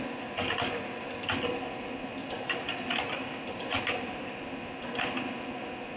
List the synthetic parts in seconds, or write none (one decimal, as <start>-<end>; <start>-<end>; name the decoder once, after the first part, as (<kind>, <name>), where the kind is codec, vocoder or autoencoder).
2.2-4.4 (vocoder, BigVGAN v2)

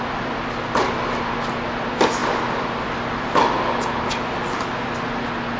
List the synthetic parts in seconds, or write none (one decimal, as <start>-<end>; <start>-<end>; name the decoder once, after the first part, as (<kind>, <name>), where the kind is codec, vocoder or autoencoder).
none